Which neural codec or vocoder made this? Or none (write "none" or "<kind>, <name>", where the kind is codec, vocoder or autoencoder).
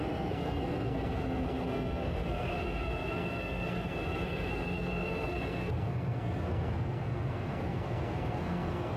codec, SNAC